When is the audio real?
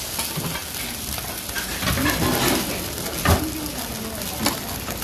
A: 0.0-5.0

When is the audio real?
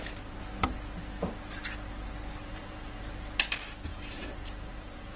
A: 0.0-2.4; 3.0-3.9